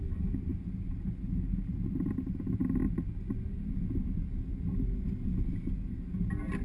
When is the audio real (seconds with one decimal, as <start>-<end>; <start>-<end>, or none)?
0.0-6.6